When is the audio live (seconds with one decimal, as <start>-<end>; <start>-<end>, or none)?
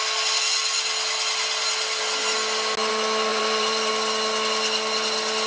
0.0-3.3; 3.9-5.5